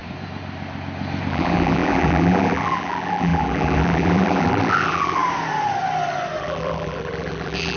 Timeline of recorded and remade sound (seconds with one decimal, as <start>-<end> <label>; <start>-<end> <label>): 0.0-1.3 recorded; 1.3-5.2 remade; 5.2-6.4 recorded; 6.4-7.8 remade